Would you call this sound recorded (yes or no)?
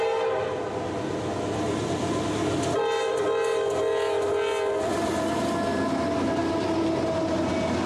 yes